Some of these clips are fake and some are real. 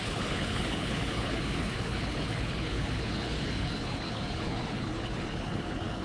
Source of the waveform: fake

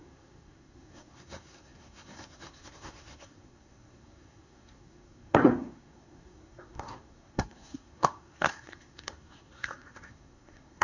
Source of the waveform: fake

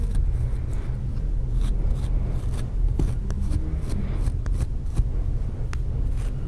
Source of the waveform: real